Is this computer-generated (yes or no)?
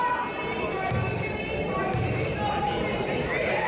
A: no